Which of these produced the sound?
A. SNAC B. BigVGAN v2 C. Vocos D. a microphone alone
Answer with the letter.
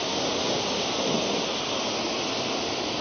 D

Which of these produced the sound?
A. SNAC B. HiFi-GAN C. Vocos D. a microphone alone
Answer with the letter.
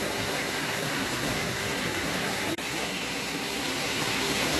A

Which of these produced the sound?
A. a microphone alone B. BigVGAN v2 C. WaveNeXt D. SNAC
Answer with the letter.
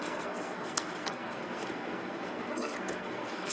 D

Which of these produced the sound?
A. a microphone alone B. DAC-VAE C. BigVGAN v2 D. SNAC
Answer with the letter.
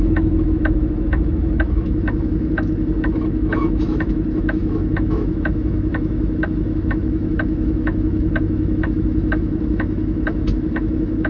B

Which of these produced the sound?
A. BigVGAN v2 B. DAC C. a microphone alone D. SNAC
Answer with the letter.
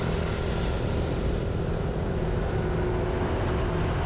C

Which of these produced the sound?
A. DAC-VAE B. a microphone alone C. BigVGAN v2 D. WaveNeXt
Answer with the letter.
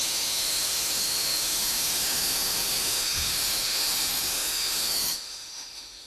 A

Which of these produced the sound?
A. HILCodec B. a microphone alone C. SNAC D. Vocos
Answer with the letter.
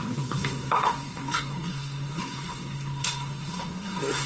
C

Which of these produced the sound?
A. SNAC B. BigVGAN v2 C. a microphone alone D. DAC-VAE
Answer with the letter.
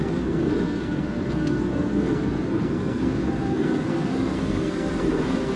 A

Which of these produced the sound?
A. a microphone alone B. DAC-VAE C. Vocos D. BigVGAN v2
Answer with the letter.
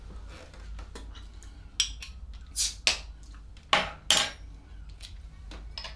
A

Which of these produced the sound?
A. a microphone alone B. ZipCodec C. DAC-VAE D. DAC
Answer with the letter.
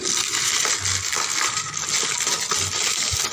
A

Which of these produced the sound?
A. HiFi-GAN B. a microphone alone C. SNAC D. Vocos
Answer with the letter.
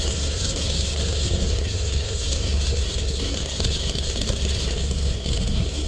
C